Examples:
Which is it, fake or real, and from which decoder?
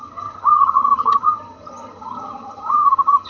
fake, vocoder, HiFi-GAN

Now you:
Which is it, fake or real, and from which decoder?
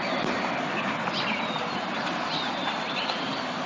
real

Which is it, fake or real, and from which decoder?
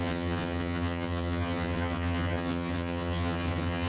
fake, vocoder, HiFi-GAN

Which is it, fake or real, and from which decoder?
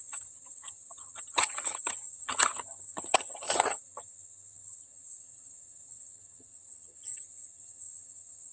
fake, vocoder, HiFi-GAN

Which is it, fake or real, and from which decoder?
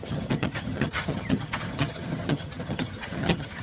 fake, vocoder, HiFi-GAN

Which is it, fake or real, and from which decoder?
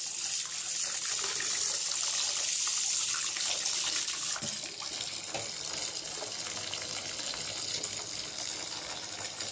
real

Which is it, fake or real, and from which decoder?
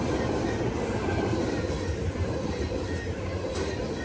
real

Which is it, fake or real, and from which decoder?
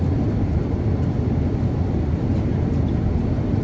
real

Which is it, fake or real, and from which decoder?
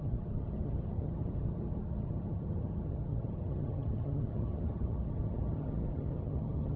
fake, vocoder, HiFi-GAN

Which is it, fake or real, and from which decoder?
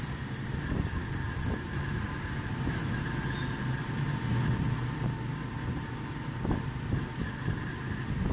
real